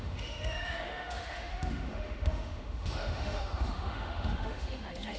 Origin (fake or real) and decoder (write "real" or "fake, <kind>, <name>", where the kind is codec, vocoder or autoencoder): fake, autoencoder, DAC-VAE